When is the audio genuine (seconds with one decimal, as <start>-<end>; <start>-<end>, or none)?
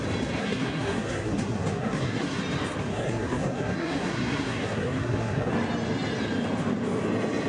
0.0-0.4; 2.4-2.9; 5.5-7.5